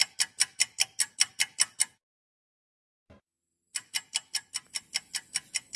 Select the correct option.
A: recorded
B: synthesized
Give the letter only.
A